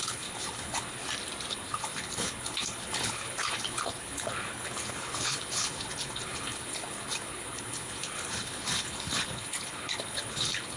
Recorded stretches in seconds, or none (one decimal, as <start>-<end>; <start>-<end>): 1.0-1.5